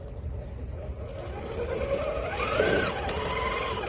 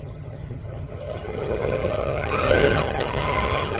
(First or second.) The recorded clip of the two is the first